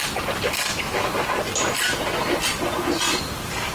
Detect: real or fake real